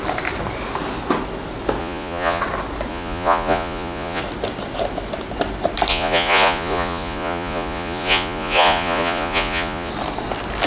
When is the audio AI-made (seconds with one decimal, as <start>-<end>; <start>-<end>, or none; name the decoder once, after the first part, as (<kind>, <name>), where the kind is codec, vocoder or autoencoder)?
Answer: 1.8-2.4 (vocoder, Vocos); 2.9-4.2; 5.9-9.9